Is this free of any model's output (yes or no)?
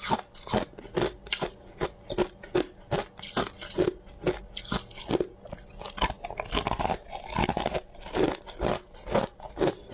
yes